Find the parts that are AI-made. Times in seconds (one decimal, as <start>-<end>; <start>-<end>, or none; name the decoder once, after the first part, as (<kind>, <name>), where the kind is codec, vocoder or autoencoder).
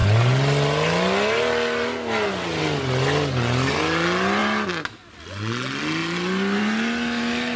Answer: none